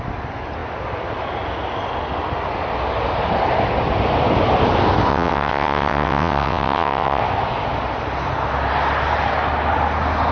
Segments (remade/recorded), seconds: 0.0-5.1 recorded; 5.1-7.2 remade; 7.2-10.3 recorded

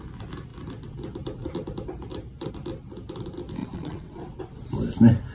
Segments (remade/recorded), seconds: 0.0-3.6 recorded; 3.6-4.4 remade; 4.4-5.3 recorded